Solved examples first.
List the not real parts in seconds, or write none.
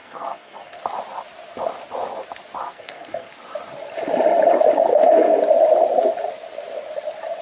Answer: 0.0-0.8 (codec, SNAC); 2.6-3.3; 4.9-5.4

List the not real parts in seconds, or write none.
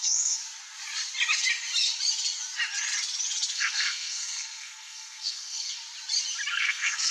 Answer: 0.0-0.4 (codec, SNAC); 3.5-5.8; 6.5-7.1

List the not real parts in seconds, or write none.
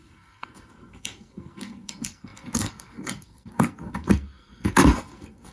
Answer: 0.0-5.5 (codec, SNAC)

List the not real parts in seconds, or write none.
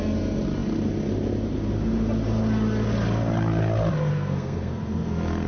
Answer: 4.1-5.5 (codec, SNAC)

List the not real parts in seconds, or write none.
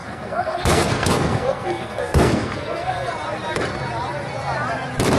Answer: 0.0-3.1 (codec, SNAC)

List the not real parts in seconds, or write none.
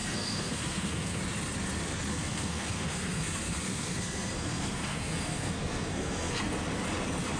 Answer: 0.0-1.2 (codec, SNAC); 2.1-6.5